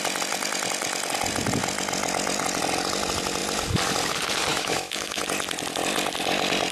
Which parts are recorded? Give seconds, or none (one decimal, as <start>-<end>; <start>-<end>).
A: 0.0-4.5; 5.2-6.7